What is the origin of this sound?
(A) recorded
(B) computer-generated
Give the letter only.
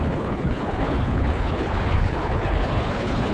B